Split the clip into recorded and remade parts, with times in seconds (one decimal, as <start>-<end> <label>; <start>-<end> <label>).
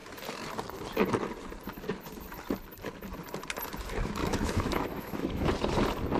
0.0-4.2 recorded; 4.2-5.5 remade; 5.5-6.2 recorded